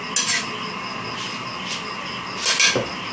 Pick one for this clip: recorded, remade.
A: recorded